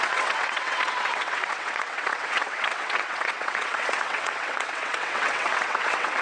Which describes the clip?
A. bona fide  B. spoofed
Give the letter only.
B